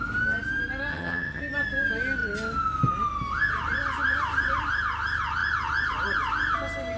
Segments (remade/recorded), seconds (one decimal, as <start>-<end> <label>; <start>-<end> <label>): 0.0-0.9 recorded; 0.9-1.4 remade; 1.4-7.0 recorded